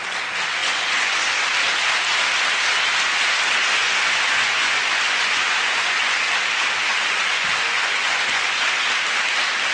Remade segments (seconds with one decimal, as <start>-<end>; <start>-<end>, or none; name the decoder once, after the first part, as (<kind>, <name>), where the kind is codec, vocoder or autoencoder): 0.6-1.3 (vocoder, Vocos); 3.6-6.3; 6.9-8.6